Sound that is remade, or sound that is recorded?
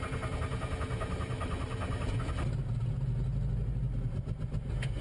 recorded